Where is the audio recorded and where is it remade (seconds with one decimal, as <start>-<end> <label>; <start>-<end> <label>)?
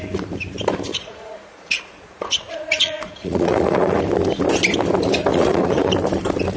0.0-0.9 recorded; 0.9-4.0 remade; 4.0-5.3 recorded; 5.3-5.9 remade; 5.9-6.6 recorded